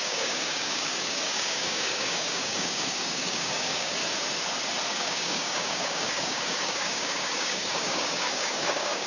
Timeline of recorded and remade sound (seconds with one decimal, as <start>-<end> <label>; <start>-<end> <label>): 0.0-4.0 remade; 4.0-4.9 recorded; 4.9-9.1 remade